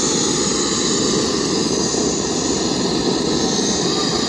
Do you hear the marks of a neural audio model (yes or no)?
no